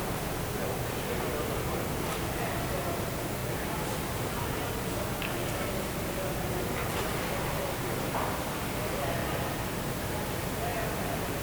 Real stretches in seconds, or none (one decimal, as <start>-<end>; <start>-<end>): 0.0-3.4; 4.6-9.2; 10.2-11.4